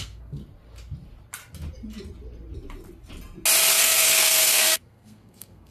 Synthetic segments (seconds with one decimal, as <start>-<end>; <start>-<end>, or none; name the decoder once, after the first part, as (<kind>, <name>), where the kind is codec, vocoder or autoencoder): 0.0-0.4 (codec, SNAC); 3.8-5.7